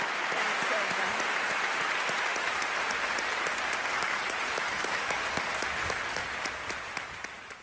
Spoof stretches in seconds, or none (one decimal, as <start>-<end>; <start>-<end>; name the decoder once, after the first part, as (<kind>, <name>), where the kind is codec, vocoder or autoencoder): 3.9-5.5 (codec, DAC)